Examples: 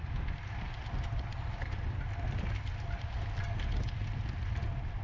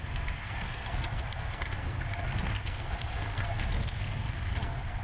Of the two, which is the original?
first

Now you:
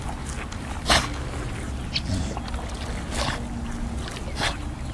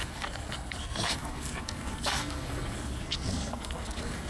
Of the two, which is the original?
first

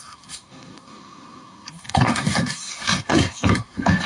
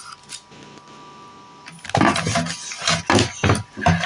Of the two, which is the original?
second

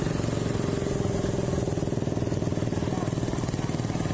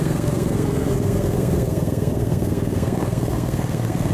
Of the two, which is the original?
first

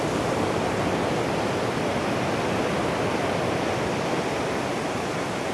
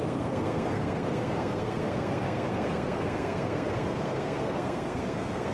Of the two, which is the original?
first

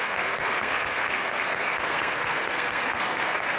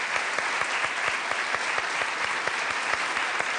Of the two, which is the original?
second